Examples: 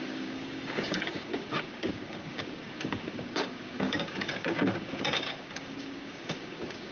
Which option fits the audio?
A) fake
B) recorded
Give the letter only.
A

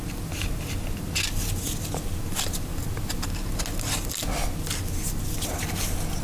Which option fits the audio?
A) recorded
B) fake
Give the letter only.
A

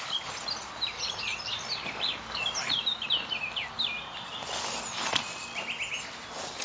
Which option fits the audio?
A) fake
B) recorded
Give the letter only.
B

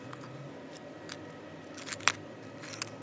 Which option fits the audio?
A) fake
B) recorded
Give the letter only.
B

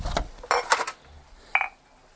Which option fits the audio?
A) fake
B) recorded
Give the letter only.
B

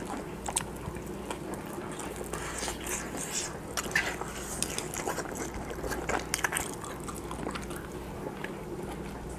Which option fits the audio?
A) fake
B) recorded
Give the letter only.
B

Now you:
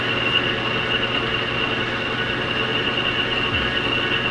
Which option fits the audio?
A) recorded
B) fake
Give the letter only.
A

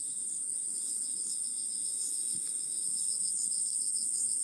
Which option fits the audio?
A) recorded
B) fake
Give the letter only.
B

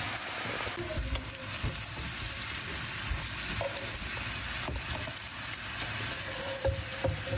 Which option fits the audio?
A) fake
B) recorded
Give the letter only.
B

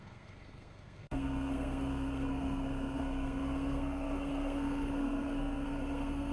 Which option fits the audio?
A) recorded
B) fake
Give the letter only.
B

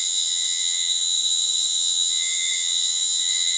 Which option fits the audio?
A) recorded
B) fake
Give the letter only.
B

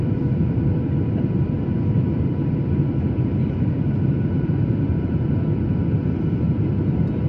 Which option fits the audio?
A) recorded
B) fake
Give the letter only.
B